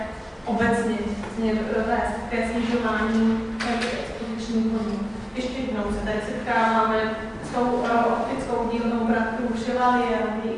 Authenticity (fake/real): real